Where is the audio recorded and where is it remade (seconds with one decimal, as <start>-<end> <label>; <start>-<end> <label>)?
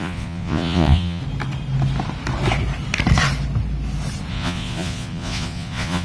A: 0.0-1.2 remade; 1.2-4.3 recorded; 4.3-6.0 remade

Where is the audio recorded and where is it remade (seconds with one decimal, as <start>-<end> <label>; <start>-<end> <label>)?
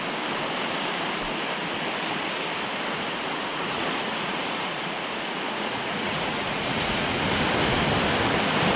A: 0.0-3.5 recorded; 3.5-7.2 remade; 7.2-8.8 recorded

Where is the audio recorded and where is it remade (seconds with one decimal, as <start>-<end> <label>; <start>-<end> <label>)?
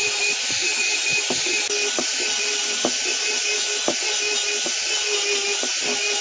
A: 0.0-6.2 recorded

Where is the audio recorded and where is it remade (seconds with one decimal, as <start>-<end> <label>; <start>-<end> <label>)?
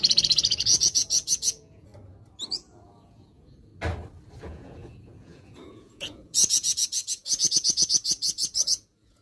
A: 0.0-1.9 remade; 1.9-2.5 recorded; 2.5-3.7 remade; 3.7-4.4 recorded; 4.4-9.2 remade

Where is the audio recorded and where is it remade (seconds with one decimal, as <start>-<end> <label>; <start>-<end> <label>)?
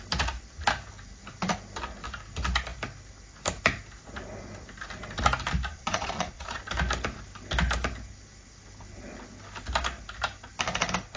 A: 0.0-5.7 recorded; 5.7-6.6 remade; 6.6-11.2 recorded